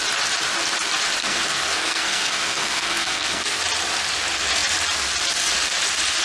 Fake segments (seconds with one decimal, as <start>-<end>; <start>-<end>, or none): 1.2-3.6